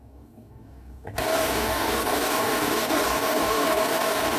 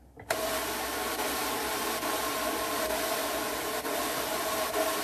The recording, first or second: second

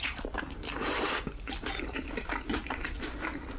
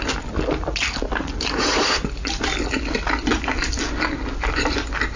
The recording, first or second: second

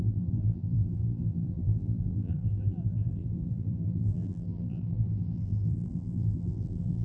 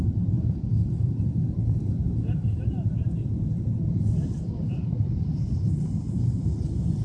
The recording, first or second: second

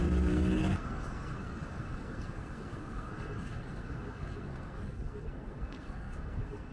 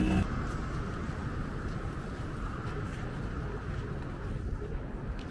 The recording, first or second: second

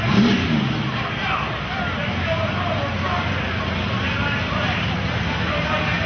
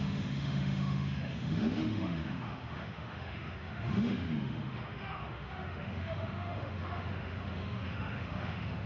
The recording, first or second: first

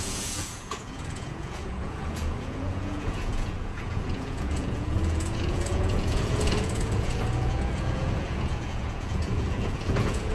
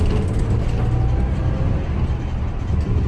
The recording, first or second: second